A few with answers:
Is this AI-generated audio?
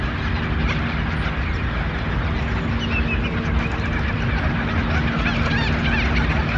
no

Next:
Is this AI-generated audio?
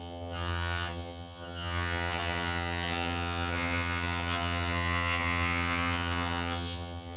yes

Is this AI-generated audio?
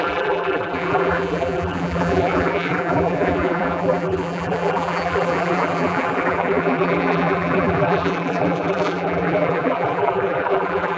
yes